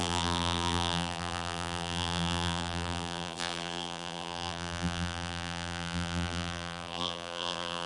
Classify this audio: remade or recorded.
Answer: remade